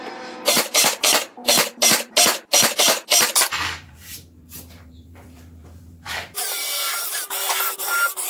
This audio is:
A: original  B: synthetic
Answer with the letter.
B